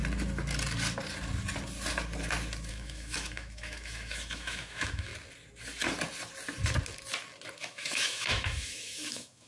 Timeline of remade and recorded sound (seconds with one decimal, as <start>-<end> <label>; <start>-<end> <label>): 0.0-2.7 recorded; 2.7-5.1 remade; 5.1-7.6 recorded; 7.6-9.5 remade